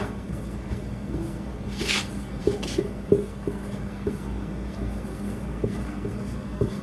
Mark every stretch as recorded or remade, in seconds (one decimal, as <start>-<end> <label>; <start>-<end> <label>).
0.0-6.8 remade